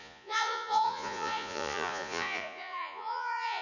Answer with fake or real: fake